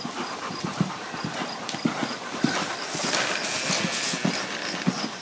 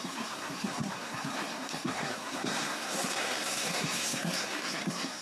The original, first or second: first